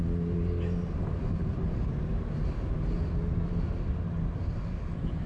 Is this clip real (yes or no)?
yes